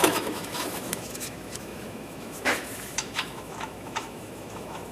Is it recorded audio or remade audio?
remade